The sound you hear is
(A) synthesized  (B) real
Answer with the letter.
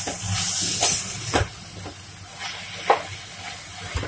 B